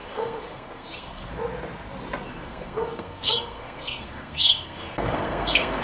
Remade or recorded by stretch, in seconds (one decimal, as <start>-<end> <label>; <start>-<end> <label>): 0.0-1.3 remade; 1.3-2.3 recorded; 2.3-5.8 remade